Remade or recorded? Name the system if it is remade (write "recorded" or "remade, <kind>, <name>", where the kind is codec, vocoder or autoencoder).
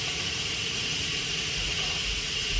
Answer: remade, vocoder, Vocos